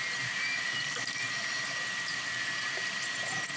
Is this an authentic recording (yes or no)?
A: no